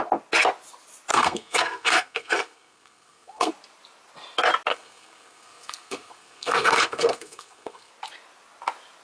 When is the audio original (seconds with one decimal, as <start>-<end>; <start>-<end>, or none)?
0.0-1.1; 3.5-4.7; 7.9-9.0

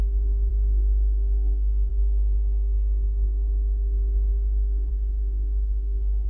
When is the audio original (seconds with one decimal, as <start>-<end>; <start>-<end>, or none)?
none

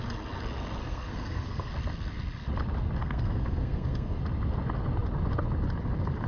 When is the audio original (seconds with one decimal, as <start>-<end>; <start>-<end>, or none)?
0.0-0.8; 1.7-3.0; 4.2-6.3

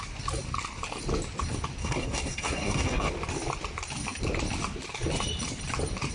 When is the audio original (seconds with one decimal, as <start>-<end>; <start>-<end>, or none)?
0.0-1.8; 3.1-6.1